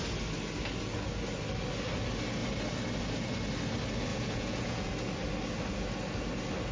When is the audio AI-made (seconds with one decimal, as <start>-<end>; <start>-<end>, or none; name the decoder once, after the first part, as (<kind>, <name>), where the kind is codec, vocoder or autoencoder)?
4.1-4.9 (vocoder, Vocos)